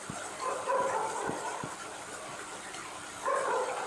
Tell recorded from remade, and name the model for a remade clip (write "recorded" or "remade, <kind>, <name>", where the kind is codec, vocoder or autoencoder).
recorded